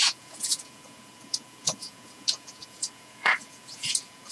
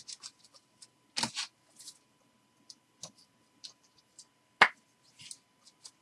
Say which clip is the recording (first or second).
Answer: second